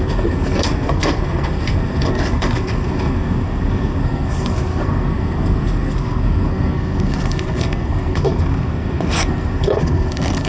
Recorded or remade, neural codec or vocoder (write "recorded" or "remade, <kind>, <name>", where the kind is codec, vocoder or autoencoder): remade, codec, SNAC